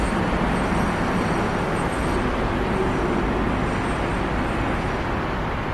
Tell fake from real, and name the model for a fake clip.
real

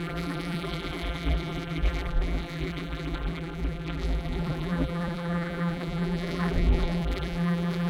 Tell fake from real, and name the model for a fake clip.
fake, vocoder, BigVGAN v2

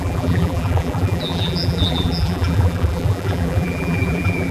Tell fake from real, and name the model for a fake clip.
fake, vocoder, BigVGAN v2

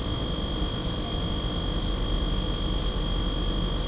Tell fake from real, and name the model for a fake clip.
real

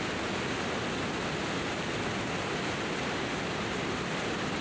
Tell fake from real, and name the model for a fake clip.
real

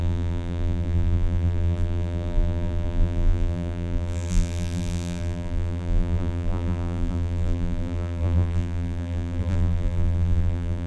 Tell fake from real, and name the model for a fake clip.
fake, vocoder, BigVGAN v2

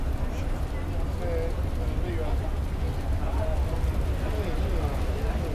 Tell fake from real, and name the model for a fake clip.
real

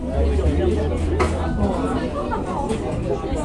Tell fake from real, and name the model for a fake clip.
real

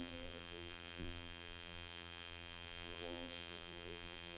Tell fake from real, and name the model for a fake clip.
fake, vocoder, BigVGAN v2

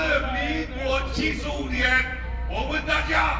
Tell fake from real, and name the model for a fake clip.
fake, vocoder, BigVGAN v2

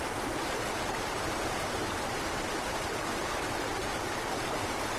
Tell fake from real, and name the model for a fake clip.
real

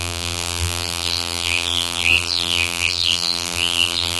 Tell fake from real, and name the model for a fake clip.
fake, vocoder, BigVGAN v2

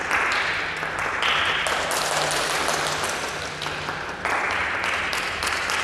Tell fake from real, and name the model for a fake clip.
real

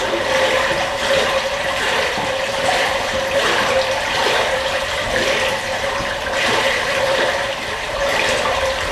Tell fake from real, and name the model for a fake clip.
fake, vocoder, BigVGAN v2